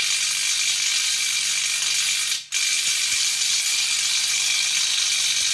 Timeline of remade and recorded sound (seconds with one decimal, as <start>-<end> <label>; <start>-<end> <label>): 0.0-0.9 recorded; 0.9-1.5 remade; 1.5-2.7 recorded; 2.7-4.9 remade; 4.9-5.5 recorded